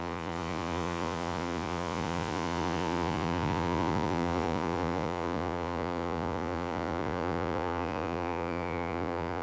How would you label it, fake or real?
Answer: fake